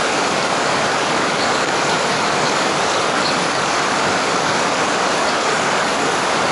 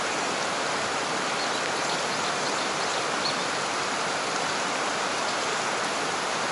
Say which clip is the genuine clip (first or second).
second